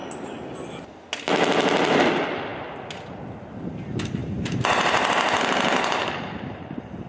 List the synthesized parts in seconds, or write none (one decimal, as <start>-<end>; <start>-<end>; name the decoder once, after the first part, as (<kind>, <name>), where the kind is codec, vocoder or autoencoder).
4.2-7.1 (vocoder, BigVGAN v2)